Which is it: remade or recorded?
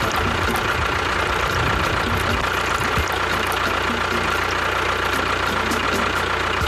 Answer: recorded